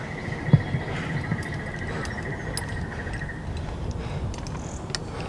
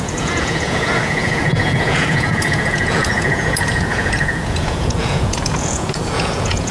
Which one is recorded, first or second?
first